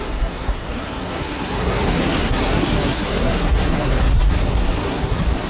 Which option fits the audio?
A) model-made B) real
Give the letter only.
A